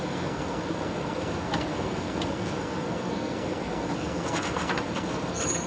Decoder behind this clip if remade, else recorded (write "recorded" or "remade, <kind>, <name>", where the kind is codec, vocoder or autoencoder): remade, codec, SNAC